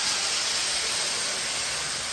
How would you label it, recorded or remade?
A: recorded